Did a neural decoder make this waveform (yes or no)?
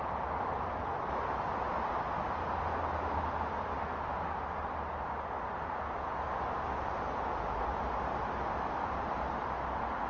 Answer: no